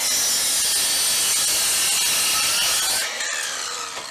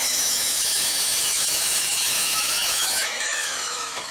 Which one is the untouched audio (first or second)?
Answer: first